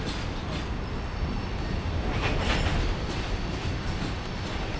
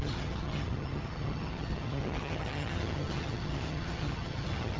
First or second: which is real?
first